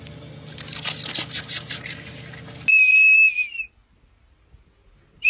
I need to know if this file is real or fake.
real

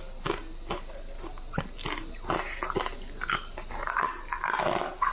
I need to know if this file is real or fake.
real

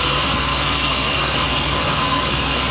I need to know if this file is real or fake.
fake